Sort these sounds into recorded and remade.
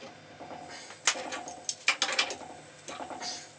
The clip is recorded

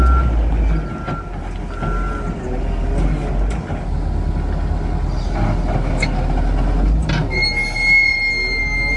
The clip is recorded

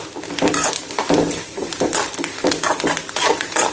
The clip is recorded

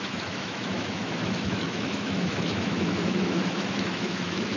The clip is remade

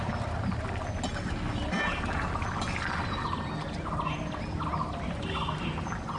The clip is recorded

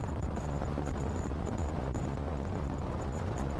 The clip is remade